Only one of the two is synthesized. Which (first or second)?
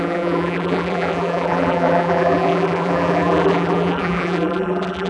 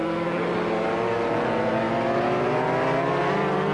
first